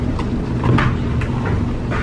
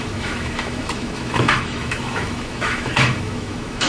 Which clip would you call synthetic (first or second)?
second